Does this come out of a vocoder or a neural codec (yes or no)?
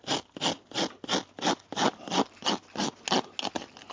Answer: no